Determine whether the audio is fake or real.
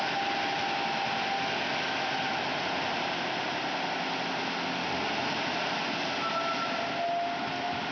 real